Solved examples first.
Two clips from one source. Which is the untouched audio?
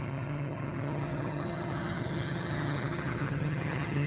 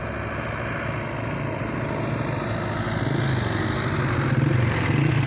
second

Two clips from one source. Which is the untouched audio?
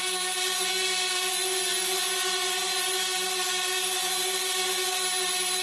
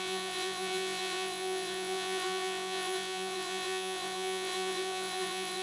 first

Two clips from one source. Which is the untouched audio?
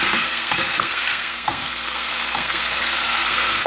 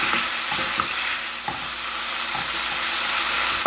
second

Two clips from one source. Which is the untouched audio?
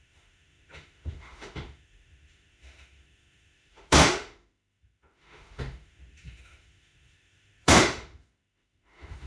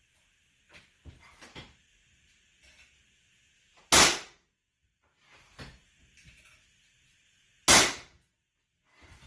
second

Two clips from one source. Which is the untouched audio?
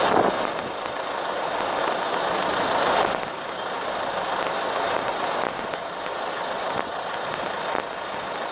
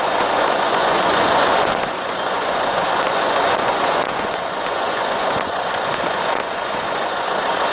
first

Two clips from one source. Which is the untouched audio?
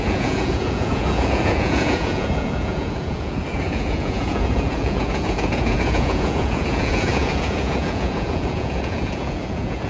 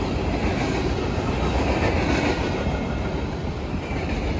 second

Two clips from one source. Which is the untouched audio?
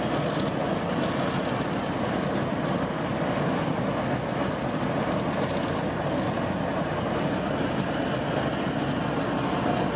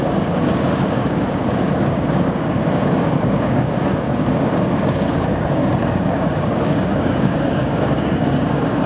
first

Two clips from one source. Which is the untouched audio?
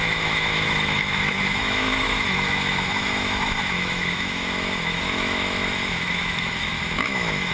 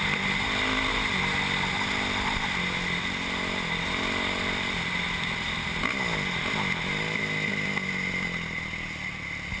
second